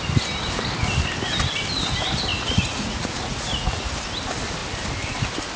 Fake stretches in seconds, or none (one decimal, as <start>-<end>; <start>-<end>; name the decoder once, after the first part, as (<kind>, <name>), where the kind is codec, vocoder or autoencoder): 2.3-3.9 (vocoder, Vocos)